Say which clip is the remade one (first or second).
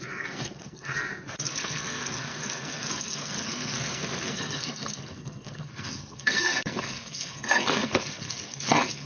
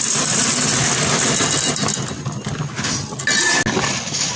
first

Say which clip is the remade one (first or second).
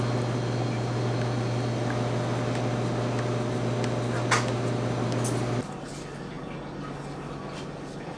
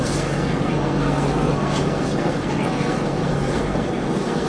second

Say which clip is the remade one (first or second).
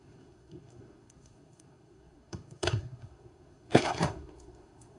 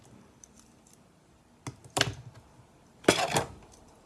first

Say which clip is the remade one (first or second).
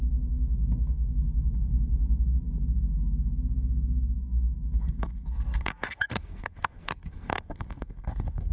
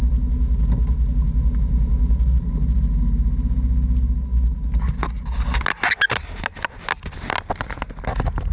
first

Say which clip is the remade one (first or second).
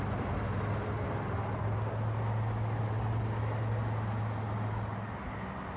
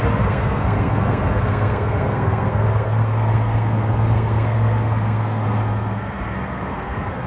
second